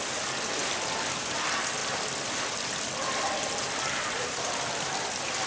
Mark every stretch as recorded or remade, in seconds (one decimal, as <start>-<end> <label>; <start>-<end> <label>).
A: 0.0-5.5 recorded